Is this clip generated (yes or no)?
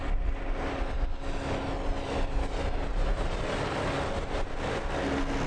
no